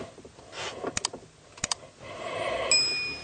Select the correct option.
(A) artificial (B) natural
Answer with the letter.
B